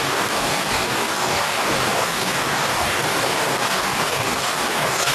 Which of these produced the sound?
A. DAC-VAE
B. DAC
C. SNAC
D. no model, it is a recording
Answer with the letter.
B